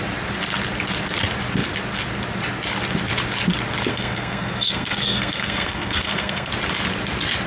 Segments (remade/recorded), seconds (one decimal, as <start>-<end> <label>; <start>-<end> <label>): 0.0-3.9 recorded; 3.9-6.5 remade; 6.5-7.5 recorded